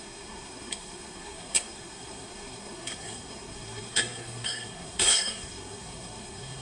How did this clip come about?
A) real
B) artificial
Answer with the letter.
B